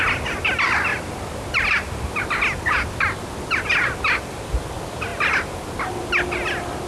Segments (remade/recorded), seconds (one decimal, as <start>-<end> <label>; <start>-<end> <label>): 0.0-6.9 recorded